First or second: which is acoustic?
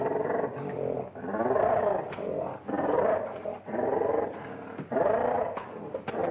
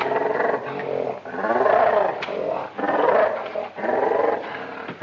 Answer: second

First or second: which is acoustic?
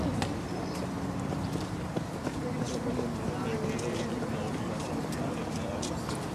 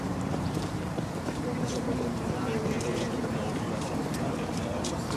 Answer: first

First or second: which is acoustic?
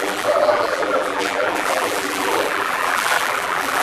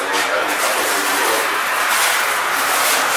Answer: second